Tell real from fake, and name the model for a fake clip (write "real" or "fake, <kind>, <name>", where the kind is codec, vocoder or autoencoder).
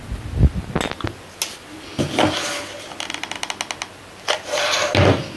real